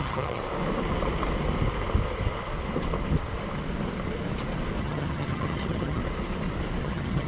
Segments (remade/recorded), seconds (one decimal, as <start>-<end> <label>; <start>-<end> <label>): 0.0-0.4 remade; 0.4-4.8 recorded; 4.8-6.0 remade; 6.0-6.8 recorded; 6.8-7.3 remade